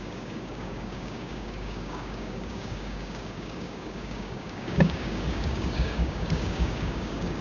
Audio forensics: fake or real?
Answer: fake